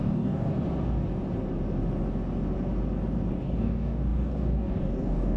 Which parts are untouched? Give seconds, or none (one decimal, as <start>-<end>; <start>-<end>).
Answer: 0.5-3.3